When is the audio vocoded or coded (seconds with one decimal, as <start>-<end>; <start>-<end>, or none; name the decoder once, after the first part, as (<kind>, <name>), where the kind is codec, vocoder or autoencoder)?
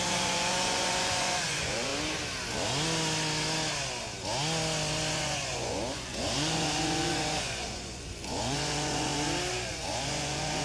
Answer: 0.0-1.9 (vocoder, Vocos); 5.1-9.1; 9.7-10.6